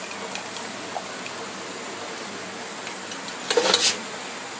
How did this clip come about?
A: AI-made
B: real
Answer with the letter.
B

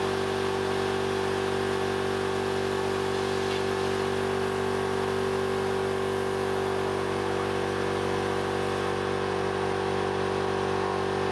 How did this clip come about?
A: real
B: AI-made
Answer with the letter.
A